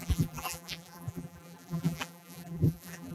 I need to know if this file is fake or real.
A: fake